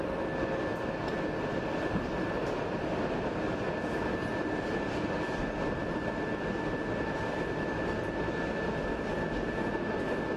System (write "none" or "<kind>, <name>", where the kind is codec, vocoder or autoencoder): none